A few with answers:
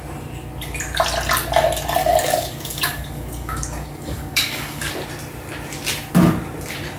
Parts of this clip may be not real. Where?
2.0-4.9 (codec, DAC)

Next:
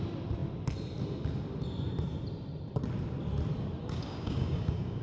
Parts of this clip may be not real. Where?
3.8-5.0 (codec, DAC)

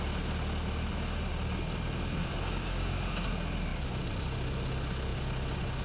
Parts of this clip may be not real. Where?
2.2-3.3 (codec, DAC)

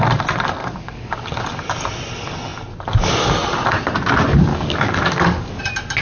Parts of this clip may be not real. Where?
0.6-1.1 (codec, DAC); 4.5-5.6

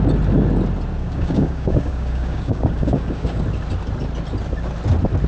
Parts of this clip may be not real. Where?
1.0-3.4 (codec, DAC)

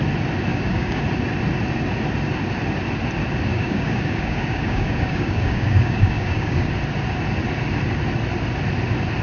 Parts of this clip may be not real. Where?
0.5-1.0 (codec, DAC); 3.5-6.7

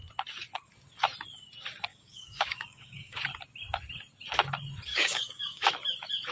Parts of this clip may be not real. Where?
1.9-3.2 (codec, DAC); 4.9-5.7